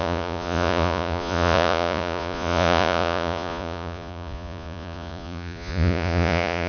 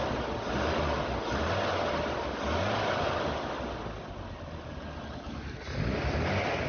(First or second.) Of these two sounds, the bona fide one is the second